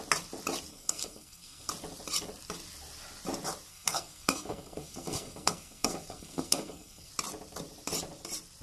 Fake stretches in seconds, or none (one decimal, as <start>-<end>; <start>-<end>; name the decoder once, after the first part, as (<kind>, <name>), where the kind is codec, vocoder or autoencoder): 0.7-1.7 (codec, SNAC); 3.7-7.1